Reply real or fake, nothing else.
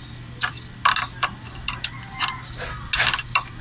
real